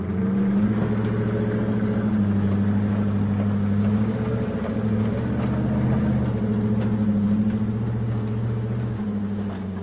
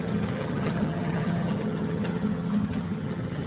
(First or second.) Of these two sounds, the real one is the first